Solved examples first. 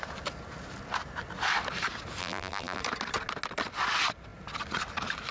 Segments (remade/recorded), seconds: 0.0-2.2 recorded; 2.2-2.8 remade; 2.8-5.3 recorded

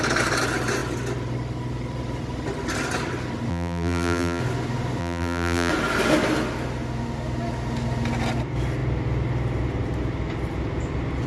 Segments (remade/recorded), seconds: 0.0-3.5 recorded; 3.5-4.4 remade; 4.4-5.0 recorded; 5.0-5.7 remade; 5.7-11.3 recorded

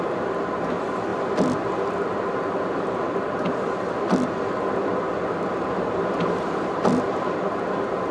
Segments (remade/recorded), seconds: 0.0-8.1 remade

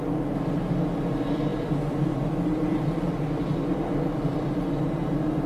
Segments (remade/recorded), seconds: 0.0-1.5 recorded; 1.5-4.5 remade; 4.5-5.5 recorded

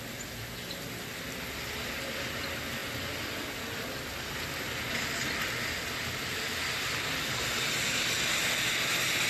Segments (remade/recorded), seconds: 0.0-9.3 recorded

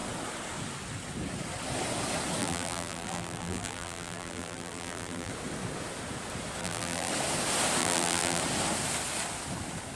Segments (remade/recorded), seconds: 0.0-2.4 recorded; 2.4-5.3 remade; 5.3-6.6 recorded; 6.6-7.1 remade; 7.1-7.8 recorded; 7.8-8.4 remade; 8.4-10.0 recorded

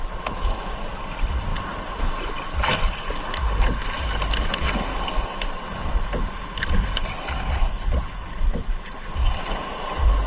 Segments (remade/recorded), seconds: 0.0-6.5 recorded; 6.5-7.1 remade; 7.1-10.3 recorded